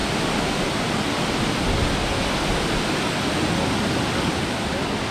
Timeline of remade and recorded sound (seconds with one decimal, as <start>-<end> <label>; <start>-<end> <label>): 0.0-5.1 recorded